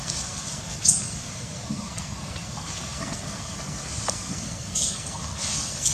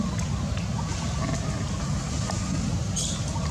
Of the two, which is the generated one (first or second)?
first